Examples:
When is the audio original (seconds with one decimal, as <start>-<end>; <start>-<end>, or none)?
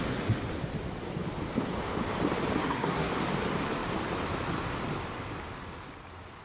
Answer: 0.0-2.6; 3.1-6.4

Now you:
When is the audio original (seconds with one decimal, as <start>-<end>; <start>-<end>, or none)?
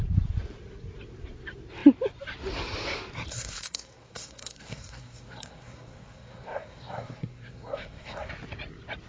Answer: 0.0-3.3; 8.3-9.1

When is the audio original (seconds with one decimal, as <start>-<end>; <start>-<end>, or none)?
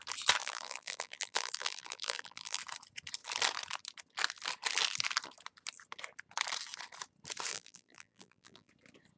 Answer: 0.0-0.4; 2.6-7.5; 8.7-9.2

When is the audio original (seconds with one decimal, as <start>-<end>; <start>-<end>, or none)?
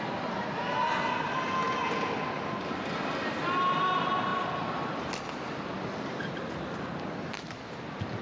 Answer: 0.0-8.2